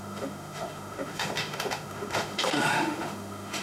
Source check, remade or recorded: remade